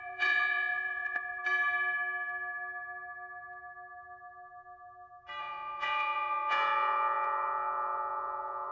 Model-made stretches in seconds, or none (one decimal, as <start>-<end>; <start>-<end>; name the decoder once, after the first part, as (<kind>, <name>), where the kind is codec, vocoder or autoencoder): 0.0-1.4 (vocoder, Vocos); 5.4-8.7